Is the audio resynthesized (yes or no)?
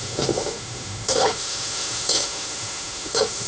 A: yes